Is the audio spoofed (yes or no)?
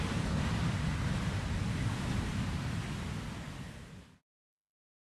no